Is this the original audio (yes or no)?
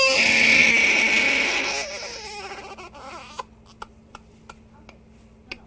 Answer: yes